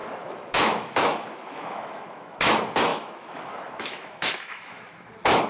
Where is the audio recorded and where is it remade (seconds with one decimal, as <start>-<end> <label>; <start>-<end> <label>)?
0.0-2.4 remade; 2.4-2.9 recorded; 2.9-5.1 remade; 5.1-5.5 recorded